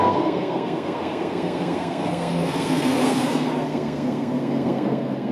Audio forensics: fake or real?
fake